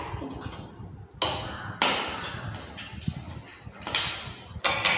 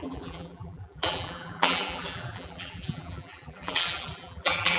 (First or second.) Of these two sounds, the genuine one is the first